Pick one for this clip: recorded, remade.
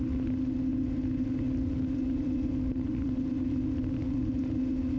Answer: recorded